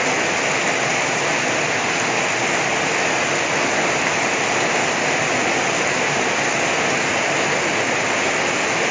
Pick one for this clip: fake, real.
real